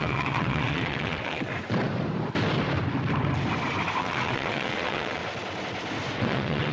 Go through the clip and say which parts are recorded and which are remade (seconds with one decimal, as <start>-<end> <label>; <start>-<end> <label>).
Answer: 0.0-1.5 remade; 1.5-4.0 recorded; 4.0-5.2 remade; 5.2-6.2 recorded; 6.2-6.7 remade